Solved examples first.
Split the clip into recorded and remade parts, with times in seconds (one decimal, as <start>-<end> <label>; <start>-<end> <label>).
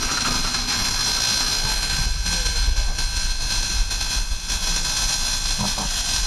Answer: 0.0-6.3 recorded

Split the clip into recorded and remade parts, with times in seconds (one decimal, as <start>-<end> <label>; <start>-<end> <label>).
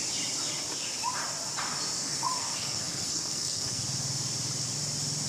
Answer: 0.0-2.0 recorded; 2.0-3.8 remade; 3.8-5.3 recorded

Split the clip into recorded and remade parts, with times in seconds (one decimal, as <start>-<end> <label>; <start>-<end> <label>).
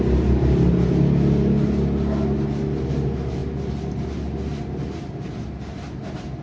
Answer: 0.0-6.4 recorded